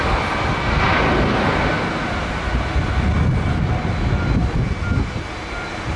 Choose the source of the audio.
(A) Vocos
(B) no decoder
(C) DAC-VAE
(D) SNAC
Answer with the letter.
B